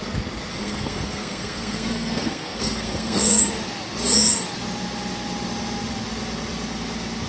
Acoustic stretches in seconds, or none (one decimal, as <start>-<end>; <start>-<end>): 0.0-0.5; 3.4-7.3